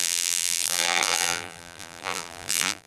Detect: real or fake fake